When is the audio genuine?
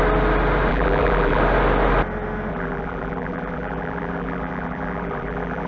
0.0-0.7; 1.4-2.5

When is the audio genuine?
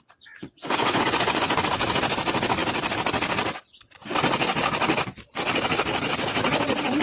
0.0-0.4; 1.6-7.0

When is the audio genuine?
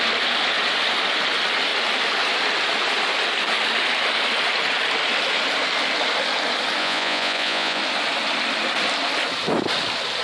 0.0-6.8; 7.8-10.2